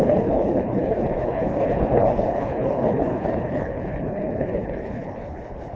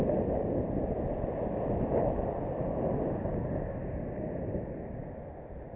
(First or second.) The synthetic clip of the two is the first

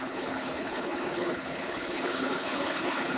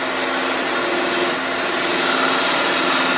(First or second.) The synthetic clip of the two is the first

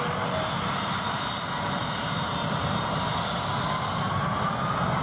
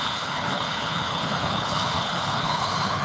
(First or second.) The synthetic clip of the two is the second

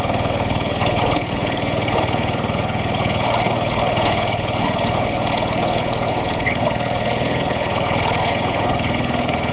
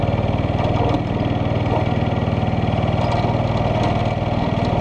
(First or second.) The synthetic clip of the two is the first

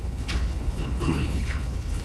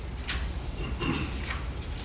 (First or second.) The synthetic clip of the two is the first